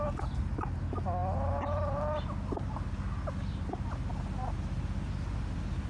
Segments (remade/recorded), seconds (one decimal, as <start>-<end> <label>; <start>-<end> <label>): 0.0-5.9 recorded